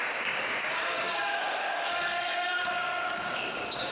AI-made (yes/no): yes